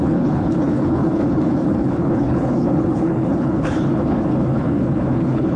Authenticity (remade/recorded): remade